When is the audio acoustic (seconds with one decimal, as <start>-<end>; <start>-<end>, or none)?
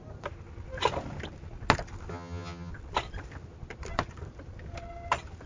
0.0-2.1; 2.7-5.5